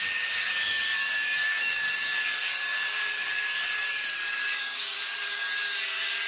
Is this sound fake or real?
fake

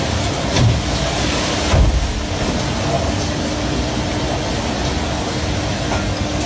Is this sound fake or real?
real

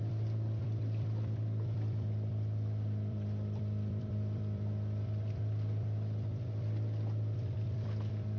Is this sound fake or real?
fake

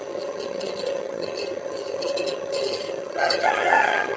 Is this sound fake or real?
fake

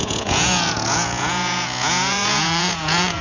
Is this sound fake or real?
fake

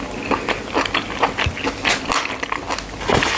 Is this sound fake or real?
real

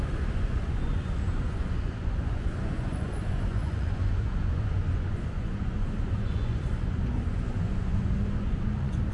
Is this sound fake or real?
fake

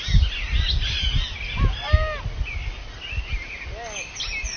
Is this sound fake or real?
real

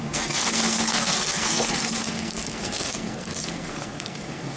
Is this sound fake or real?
fake